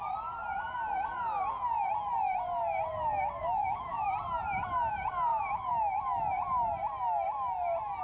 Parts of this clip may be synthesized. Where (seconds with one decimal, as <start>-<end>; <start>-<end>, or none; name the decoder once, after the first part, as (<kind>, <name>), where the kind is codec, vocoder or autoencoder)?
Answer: 3.4-4.1 (autoencoder, DAC-VAE); 5.3-6.0